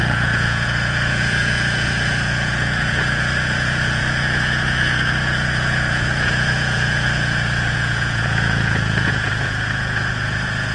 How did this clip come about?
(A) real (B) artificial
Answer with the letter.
B